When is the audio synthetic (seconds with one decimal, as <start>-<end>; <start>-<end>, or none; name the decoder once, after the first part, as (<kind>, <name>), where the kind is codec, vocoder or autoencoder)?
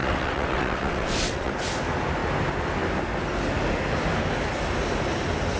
0.0-1.5 (vocoder, WaveNeXt)